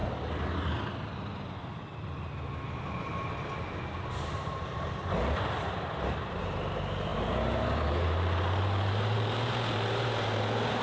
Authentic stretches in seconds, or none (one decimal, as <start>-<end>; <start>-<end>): 0.0-4.2